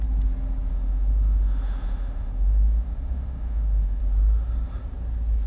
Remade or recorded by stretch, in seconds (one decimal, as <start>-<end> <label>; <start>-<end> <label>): 0.0-0.7 recorded; 0.7-4.0 remade; 4.0-5.5 recorded